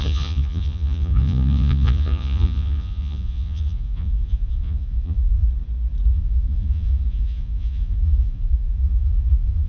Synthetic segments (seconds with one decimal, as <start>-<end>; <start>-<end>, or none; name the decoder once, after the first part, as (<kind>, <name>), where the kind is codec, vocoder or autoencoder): 0.0-5.5 (vocoder, Vocos); 6.1-9.7